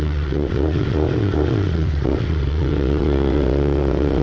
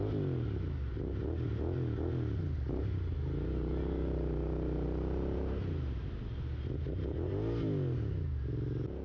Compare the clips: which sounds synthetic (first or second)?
first